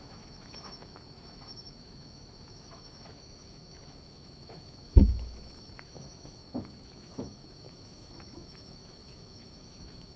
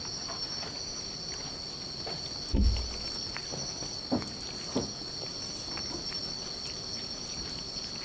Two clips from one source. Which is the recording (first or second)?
second